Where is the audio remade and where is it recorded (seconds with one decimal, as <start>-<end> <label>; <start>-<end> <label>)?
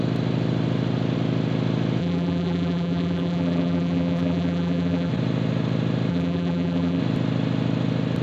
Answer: 0.0-2.0 recorded; 2.0-5.1 remade; 5.1-6.1 recorded; 6.1-7.0 remade; 7.0-8.2 recorded